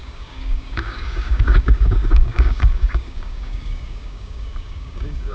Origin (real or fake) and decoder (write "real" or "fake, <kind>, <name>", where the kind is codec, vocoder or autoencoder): fake, codec, DAC